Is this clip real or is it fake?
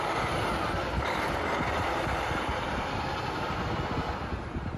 real